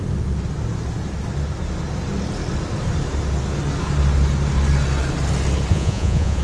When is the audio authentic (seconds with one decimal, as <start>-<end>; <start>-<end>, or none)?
0.0-5.7